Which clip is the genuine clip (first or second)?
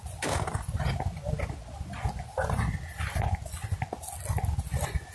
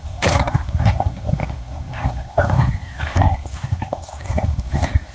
first